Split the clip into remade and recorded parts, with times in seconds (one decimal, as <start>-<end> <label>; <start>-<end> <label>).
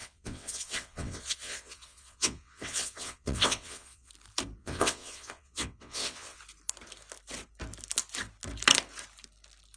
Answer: 0.0-4.1 remade; 4.1-4.6 recorded; 4.6-6.4 remade; 6.4-9.8 recorded